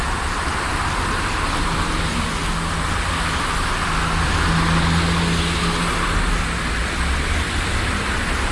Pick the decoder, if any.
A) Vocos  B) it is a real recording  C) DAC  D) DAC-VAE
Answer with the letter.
B